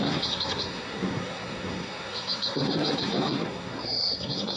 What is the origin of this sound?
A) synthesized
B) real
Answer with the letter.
A